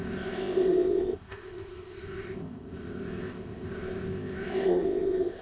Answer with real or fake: fake